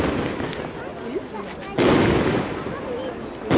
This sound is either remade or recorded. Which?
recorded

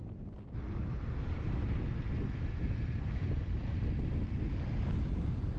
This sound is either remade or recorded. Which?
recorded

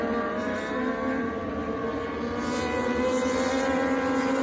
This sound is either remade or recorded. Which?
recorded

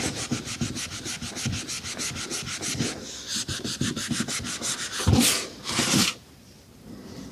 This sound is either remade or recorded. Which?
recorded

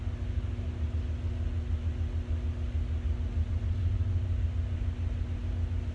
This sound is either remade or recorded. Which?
recorded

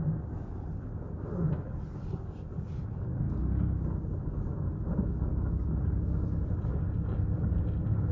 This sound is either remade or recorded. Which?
recorded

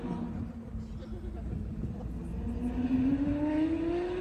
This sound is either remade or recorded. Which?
recorded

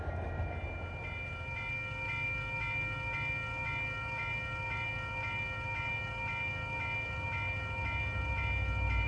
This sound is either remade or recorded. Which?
recorded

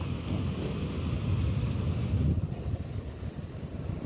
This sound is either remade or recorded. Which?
recorded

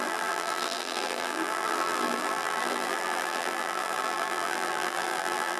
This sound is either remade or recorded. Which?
remade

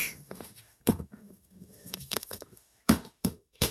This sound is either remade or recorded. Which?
remade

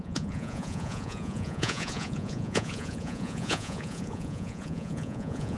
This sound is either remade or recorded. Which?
remade